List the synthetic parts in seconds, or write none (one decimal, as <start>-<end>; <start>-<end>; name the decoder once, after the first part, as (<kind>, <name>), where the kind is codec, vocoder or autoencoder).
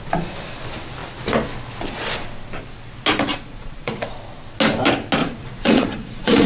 3.3-4.0 (vocoder, Vocos); 5.2-6.5